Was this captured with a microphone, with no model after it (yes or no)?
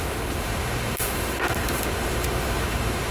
no